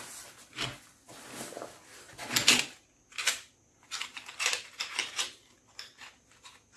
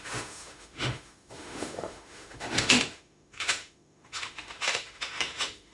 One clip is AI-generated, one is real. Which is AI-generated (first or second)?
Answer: second